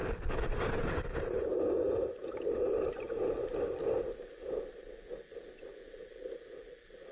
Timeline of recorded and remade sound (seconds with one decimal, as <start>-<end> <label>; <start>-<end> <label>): 0.0-2.6 remade; 2.6-4.4 recorded; 4.4-5.2 remade; 5.2-7.1 recorded